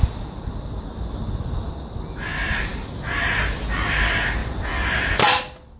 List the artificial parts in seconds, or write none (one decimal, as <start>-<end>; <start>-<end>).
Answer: none